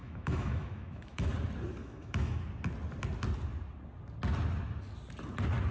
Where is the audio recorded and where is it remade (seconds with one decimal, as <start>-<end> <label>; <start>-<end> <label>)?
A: 0.0-1.3 remade; 1.3-1.8 recorded; 1.8-2.4 remade; 2.4-5.7 recorded